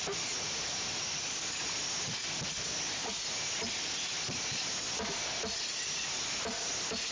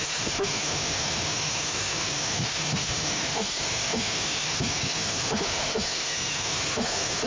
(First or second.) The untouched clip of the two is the first